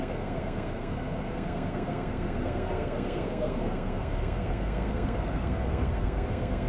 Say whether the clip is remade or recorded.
remade